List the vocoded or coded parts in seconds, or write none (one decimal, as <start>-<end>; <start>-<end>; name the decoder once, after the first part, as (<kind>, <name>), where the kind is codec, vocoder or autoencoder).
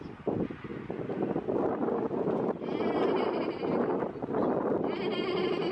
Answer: none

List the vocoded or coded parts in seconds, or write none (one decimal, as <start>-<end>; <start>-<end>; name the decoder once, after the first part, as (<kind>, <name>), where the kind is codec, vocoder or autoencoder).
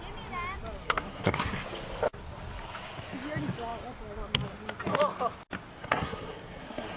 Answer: 0.8-1.5 (codec, SNAC); 5.7-7.0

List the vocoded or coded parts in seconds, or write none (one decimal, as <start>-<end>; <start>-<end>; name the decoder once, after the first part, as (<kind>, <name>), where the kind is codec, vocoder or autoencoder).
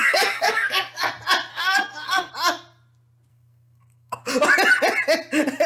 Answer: 0.0-1.1 (codec, SNAC); 1.5-2.3; 3.3-4.3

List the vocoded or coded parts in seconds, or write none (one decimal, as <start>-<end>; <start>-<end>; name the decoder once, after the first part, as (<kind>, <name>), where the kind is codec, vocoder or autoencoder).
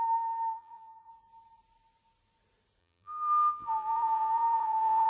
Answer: 0.5-1.1 (vocoder, BigVGAN v2); 2.8-5.1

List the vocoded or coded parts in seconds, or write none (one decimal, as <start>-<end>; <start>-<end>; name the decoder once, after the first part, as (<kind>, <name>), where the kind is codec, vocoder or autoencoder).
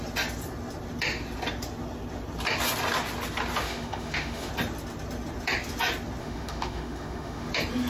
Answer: 3.6-4.5 (autoencoder, DAC-VAE); 6.2-7.5